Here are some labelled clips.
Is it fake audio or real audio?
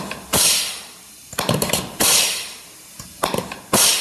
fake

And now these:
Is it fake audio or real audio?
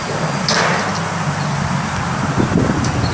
real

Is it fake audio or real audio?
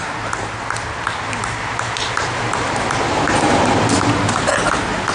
fake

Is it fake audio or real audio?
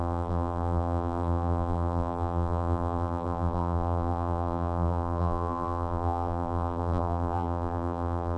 fake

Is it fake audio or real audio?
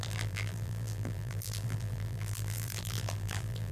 fake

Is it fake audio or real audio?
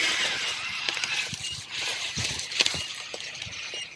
fake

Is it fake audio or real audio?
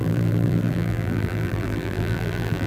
fake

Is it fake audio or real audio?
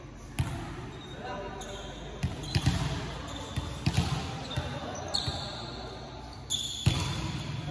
real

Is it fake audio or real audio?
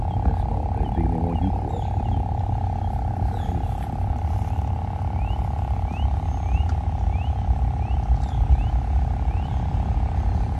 real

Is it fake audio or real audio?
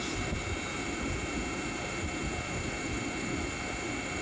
real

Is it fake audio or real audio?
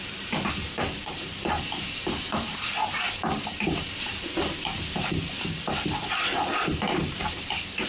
fake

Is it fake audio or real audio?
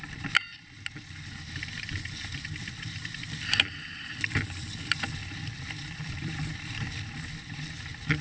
fake